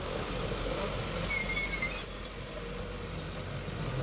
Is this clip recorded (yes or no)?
yes